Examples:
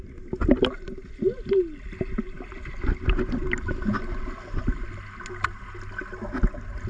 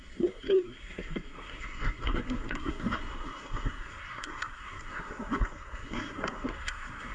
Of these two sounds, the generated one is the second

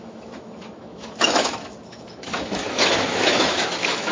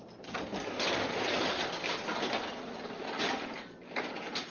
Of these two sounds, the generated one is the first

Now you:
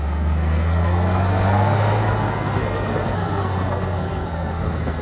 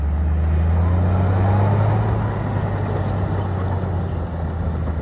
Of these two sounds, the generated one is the first